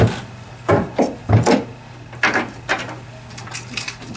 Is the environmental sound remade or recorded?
recorded